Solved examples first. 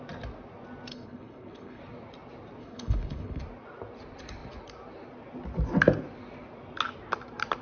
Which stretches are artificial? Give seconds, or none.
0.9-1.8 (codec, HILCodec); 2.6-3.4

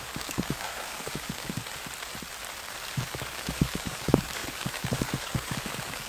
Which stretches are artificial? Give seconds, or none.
0.0-1.6 (codec, DAC); 2.7-6.1

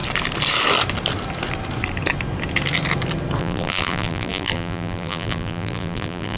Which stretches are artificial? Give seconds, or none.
3.4-6.4 (vocoder, BigVGAN v2)

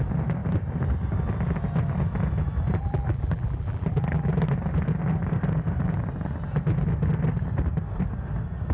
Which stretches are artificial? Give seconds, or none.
2.8-4.3 (vocoder, BigVGAN v2)

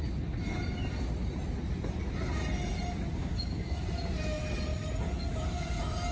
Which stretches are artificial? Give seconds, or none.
3.2-3.7 (codec, DAC)